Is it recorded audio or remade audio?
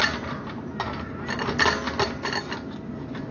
recorded